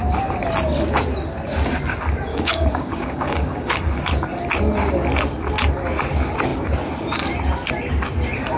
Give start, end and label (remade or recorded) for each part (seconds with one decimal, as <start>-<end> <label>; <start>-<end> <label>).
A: 0.0-2.3 recorded; 2.3-3.8 remade; 3.8-8.6 recorded